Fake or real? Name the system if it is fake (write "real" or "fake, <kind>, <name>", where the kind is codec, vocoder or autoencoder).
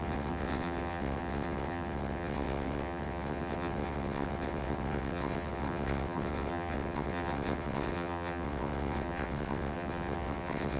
fake, vocoder, WaveNeXt